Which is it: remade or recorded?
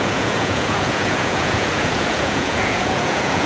remade